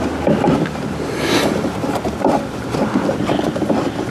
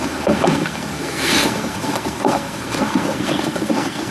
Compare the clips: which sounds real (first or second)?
first